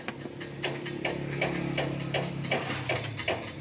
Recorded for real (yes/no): yes